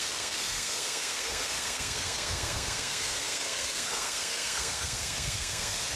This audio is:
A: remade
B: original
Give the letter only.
A